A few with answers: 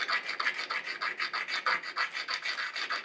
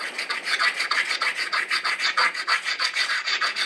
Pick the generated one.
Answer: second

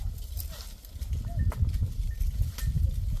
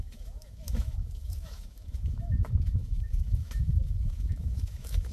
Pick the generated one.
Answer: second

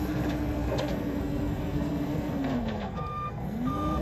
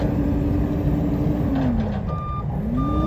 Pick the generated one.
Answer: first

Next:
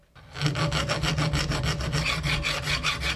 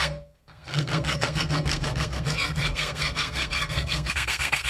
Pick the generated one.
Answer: second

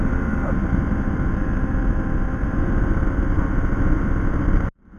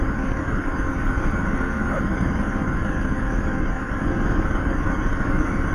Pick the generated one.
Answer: second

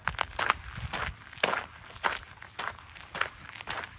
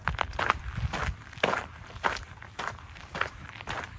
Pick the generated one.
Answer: second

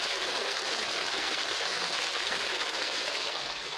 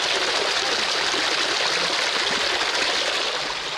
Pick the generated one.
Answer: first